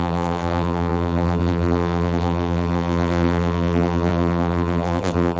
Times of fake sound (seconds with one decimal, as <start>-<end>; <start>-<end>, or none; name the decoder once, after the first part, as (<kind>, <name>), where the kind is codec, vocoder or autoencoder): 0.0-5.4 (vocoder, BigVGAN v2)